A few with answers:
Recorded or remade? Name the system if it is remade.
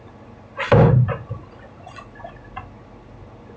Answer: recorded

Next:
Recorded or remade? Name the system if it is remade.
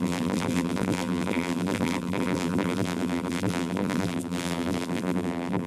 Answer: remade, vocoder, BigVGAN v2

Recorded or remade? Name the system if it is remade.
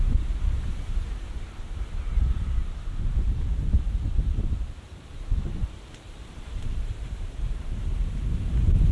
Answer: remade, vocoder, BigVGAN v2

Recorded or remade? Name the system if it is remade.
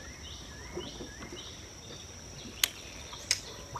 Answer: recorded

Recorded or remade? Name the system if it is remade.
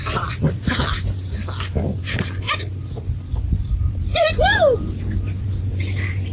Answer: recorded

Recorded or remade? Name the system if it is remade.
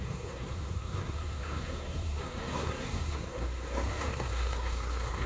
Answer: remade, codec, SNAC